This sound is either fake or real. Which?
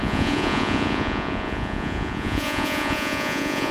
fake